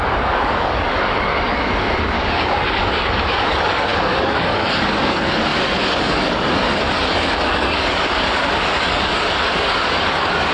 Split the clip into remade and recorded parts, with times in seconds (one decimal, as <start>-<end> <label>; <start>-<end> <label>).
0.0-10.5 remade